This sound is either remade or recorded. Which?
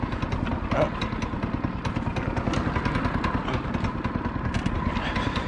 recorded